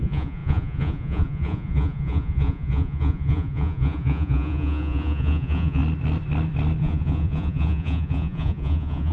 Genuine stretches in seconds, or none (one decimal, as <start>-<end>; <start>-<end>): 5.8-6.8